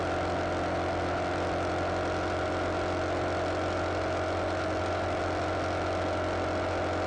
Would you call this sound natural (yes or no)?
yes